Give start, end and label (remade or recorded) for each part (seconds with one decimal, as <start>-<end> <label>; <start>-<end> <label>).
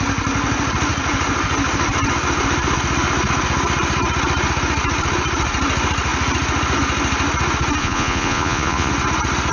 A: 0.0-7.8 recorded; 7.8-8.9 remade; 8.9-9.5 recorded